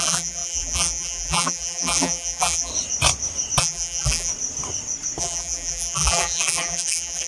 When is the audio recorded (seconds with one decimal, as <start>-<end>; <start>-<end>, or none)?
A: 2.7-3.6; 4.3-5.2